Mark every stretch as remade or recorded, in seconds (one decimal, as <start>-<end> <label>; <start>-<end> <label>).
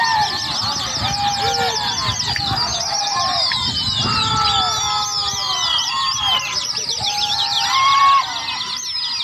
0.0-2.9 recorded; 2.9-3.8 remade; 3.8-5.2 recorded; 5.2-8.0 remade; 8.0-9.2 recorded